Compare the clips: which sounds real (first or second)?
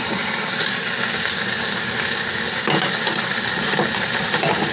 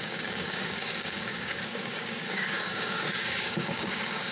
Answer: first